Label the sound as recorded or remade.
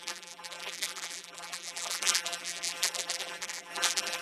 remade